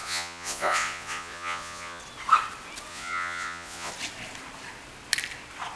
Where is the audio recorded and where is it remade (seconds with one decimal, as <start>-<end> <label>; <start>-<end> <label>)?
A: 0.0-2.0 remade; 2.0-2.9 recorded; 2.9-3.9 remade; 3.9-5.8 recorded